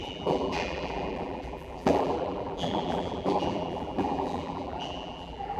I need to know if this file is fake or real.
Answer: fake